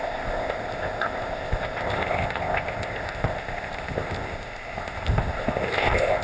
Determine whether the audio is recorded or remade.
remade